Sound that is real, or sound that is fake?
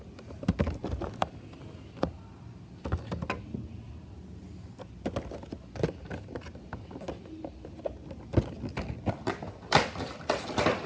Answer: real